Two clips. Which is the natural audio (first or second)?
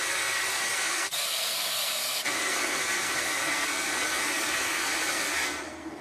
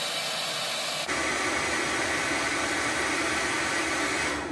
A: second